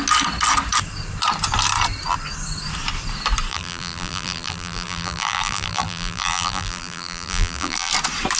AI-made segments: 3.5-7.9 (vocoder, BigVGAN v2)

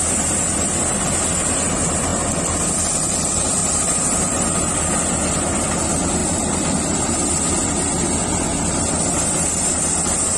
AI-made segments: 3.6-4.9 (vocoder, BigVGAN v2); 6.2-7.4; 8.5-9.8

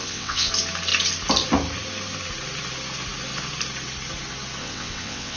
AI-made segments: 0.0-0.5 (vocoder, WaveNeXt); 4.6-5.4

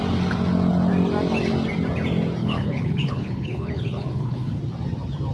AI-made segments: 2.4-4.6 (codec, HILCodec)

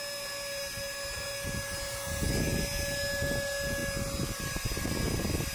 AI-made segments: none